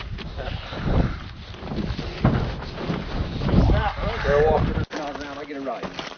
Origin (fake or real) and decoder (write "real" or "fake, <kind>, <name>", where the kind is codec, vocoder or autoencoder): real